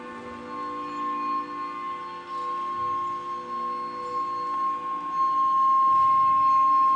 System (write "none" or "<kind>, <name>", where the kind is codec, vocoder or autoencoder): none